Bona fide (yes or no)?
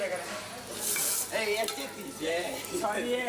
yes